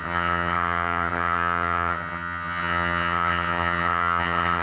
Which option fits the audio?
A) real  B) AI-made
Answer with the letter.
B